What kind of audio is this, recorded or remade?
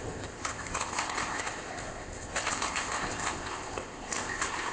remade